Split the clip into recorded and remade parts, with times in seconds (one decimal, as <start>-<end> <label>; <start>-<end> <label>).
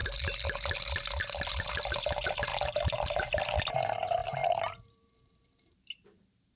0.0-1.5 recorded; 1.5-2.5 remade; 2.5-3.7 recorded; 3.7-6.6 remade